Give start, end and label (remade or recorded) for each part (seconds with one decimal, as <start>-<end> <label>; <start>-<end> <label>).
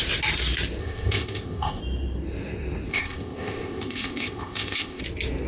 0.0-0.8 recorded; 0.8-1.8 remade; 1.8-2.9 recorded; 2.9-5.0 remade; 5.0-5.5 recorded